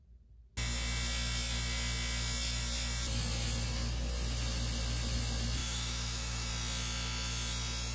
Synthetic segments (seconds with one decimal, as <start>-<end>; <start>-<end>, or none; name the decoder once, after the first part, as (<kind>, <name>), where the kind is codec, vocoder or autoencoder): 5.6-6.5 (autoencoder, DAC-VAE)